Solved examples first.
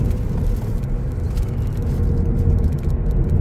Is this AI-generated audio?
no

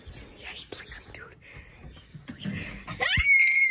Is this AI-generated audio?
no